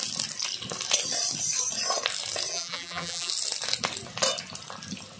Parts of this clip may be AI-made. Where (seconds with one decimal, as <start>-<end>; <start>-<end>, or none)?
2.5-3.3